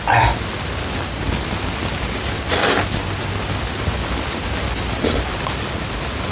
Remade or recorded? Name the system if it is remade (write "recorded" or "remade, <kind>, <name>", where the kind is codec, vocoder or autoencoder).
recorded